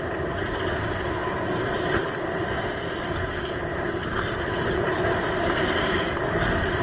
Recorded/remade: recorded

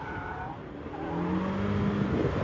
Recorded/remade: recorded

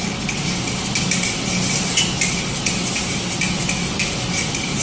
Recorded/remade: recorded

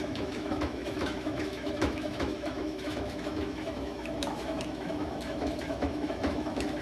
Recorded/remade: remade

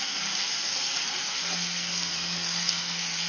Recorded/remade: remade